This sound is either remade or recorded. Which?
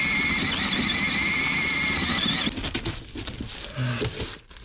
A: recorded